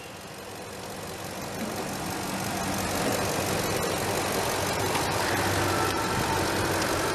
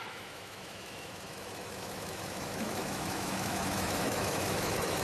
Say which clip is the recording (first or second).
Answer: first